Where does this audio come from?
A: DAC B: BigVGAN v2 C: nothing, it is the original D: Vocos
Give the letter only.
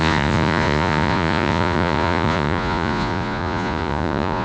D